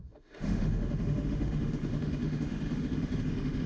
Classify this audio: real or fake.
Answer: fake